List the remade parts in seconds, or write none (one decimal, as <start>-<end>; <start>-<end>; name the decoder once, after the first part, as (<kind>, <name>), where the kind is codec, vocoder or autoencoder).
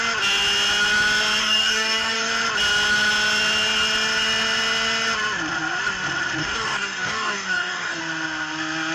1.4-2.3 (codec, DAC); 6.4-8.0